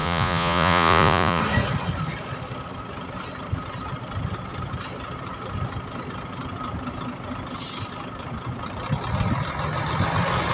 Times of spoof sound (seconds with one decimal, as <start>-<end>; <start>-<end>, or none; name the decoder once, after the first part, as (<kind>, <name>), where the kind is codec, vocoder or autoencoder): 0.0-1.4 (vocoder, Vocos)